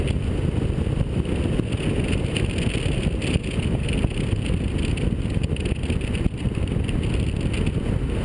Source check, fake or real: real